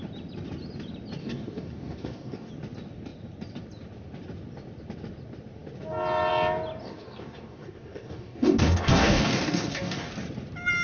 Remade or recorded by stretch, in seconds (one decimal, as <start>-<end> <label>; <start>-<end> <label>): 0.0-1.2 recorded; 1.2-2.5 remade; 2.5-6.8 recorded; 6.8-10.1 remade; 10.1-10.8 recorded